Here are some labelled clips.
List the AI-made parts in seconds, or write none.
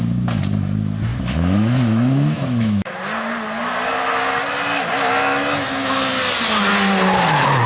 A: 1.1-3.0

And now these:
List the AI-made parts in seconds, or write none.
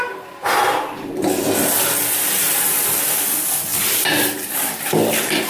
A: none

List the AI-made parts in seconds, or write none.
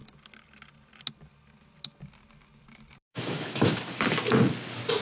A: 3.1-3.9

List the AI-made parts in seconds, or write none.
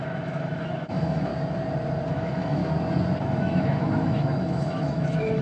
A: 0.0-1.3; 2.1-2.6; 3.2-5.4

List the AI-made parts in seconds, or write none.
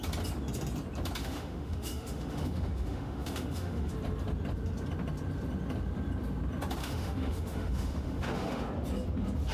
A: 1.2-3.9; 6.8-8.6